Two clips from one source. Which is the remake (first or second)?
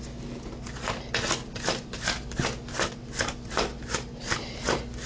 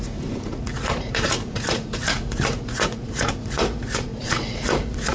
second